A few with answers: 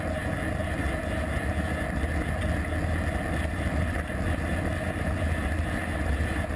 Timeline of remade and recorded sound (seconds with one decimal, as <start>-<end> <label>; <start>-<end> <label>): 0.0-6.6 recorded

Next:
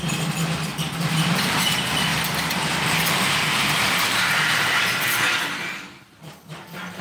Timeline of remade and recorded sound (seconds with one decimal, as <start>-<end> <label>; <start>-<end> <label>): 0.0-0.7 recorded; 0.7-1.3 remade; 1.3-2.1 recorded; 2.1-6.3 remade; 6.3-7.0 recorded

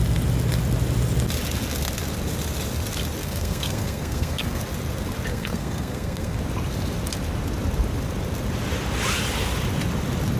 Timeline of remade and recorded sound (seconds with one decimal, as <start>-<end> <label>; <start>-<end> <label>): 0.0-3.2 recorded; 3.2-4.6 remade; 4.6-5.3 recorded; 5.3-6.4 remade; 6.4-10.4 recorded

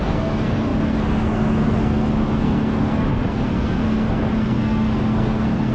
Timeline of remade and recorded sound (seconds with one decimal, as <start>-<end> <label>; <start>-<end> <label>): 0.0-5.7 remade

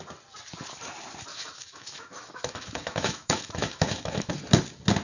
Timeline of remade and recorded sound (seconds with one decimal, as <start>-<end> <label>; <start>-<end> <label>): 0.0-1.3 recorded; 1.3-4.3 remade; 4.3-5.0 recorded